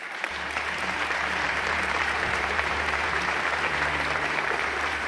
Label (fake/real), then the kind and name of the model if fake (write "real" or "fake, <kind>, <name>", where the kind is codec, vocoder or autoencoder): fake, vocoder, BigVGAN v2